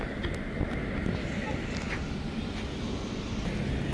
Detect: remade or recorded recorded